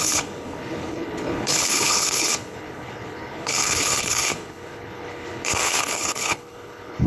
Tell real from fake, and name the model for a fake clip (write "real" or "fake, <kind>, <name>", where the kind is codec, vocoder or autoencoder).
fake, codec, HILCodec